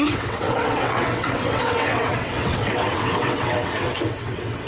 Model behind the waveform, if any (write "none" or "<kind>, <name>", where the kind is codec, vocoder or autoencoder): vocoder, WaveNeXt